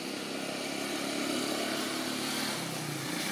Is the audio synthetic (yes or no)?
no